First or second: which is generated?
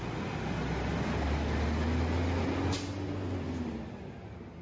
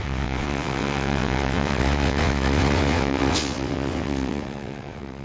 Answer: second